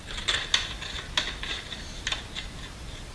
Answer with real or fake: real